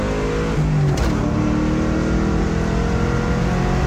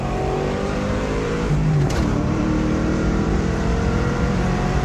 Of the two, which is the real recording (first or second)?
first